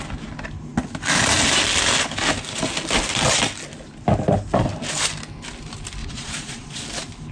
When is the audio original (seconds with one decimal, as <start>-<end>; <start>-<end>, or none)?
0.0-6.0; 6.8-7.3